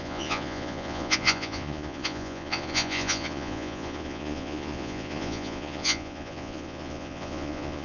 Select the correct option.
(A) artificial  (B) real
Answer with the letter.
A